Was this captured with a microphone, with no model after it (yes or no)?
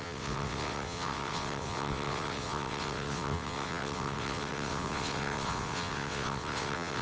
no